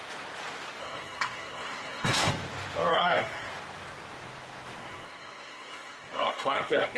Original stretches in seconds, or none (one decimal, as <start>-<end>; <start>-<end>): 0.0-0.8; 2.3-2.9; 3.5-4.8